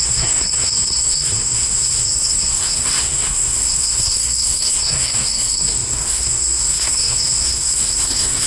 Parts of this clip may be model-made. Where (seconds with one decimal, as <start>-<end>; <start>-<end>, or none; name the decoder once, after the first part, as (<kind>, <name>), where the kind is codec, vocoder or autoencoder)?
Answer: 0.0-8.5 (codec, SNAC)